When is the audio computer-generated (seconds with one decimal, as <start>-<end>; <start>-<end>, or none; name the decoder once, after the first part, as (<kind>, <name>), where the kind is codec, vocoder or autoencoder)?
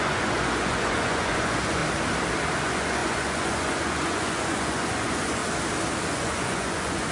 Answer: 0.0-1.8 (vocoder, Vocos); 2.6-5.4; 6.1-7.1